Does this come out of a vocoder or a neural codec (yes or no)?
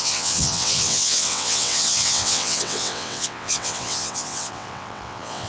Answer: yes